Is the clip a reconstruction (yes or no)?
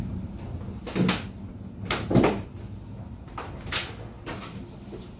no